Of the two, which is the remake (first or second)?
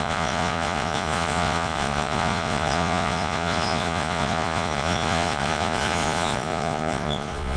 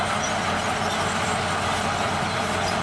first